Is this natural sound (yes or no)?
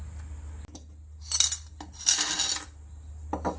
yes